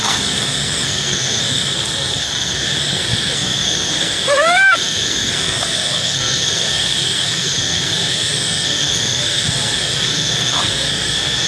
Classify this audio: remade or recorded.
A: remade